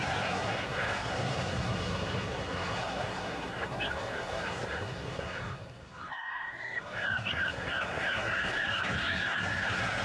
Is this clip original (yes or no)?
no